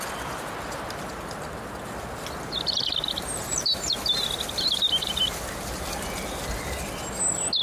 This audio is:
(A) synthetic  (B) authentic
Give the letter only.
B